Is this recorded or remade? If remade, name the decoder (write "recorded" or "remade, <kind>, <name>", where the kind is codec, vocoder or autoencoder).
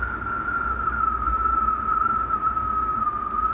recorded